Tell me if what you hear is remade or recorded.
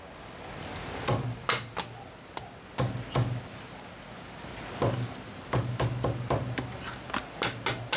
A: recorded